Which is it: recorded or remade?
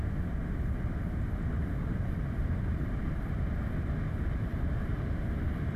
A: remade